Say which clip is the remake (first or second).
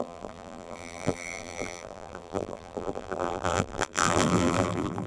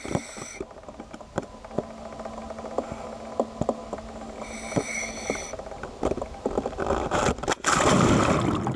first